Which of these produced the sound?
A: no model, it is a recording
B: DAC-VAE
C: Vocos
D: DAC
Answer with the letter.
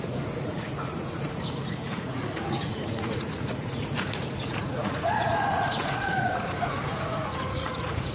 C